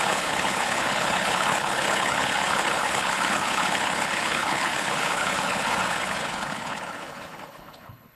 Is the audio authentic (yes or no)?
no